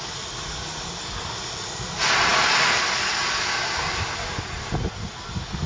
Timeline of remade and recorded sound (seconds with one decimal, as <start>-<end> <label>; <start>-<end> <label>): 0.0-5.7 recorded